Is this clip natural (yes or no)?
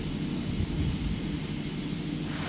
yes